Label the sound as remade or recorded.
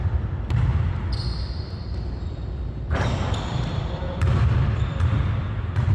remade